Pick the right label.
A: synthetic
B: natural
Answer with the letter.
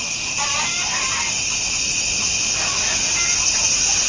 B